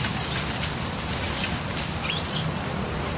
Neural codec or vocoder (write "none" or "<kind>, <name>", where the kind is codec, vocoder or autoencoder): none